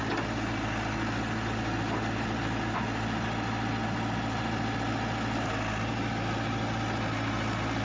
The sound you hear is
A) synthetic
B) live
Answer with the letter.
B